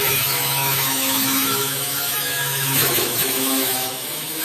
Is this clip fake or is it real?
fake